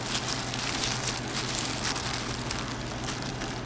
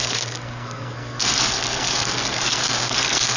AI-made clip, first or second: second